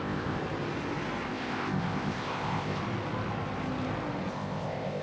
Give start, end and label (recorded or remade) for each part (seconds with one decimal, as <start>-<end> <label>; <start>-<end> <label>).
0.0-0.4 remade; 0.4-1.3 recorded; 1.3-2.8 remade; 2.8-4.3 recorded; 4.3-5.0 remade